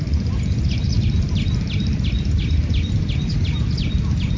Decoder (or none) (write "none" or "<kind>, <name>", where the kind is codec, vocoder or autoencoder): none